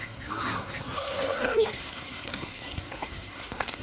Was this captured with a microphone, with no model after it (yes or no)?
no